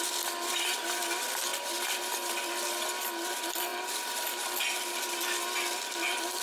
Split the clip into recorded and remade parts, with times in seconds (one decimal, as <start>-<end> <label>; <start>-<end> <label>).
0.0-6.4 recorded